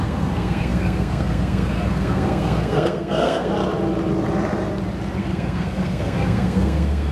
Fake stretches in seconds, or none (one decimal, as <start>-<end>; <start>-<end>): 0.0-3.5; 5.2-7.1

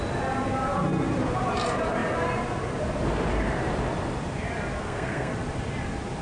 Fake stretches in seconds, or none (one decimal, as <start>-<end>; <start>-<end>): 4.8-5.3